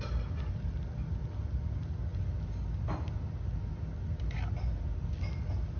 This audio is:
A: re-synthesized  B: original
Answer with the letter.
B